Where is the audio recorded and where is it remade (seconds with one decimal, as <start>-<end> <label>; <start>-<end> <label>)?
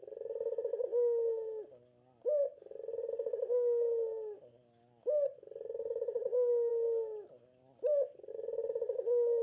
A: 0.0-9.4 recorded